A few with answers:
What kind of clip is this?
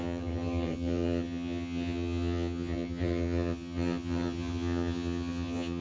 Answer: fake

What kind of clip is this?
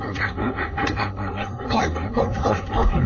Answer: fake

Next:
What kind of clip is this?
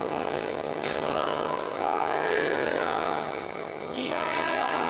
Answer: fake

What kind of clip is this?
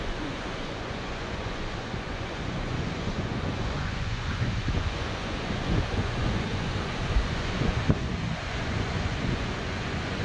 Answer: fake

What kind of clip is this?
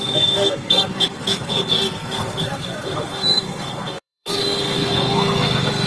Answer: fake